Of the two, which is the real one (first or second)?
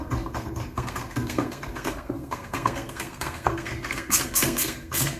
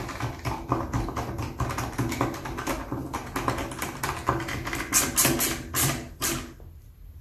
second